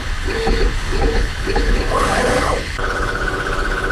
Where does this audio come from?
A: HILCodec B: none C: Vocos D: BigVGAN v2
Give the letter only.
A